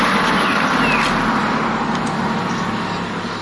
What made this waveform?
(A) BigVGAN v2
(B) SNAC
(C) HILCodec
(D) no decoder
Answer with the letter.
D